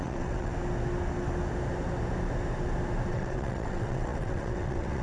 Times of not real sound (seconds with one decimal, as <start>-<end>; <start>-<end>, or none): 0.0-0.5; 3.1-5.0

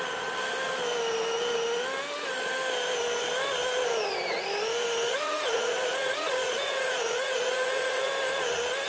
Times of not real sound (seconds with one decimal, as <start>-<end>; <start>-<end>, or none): 5.1-8.1

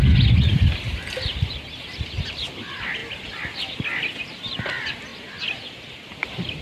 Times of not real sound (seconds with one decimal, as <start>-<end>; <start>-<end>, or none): none

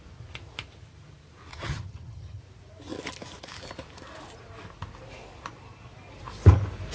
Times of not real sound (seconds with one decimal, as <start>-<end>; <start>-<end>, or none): 1.5-2.4

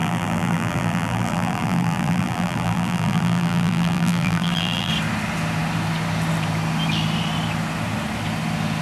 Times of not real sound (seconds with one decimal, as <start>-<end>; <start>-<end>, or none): 0.0-4.9

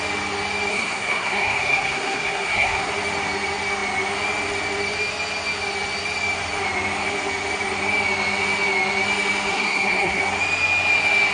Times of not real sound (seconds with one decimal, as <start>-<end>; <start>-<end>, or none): 0.7-2.9; 9.5-10.2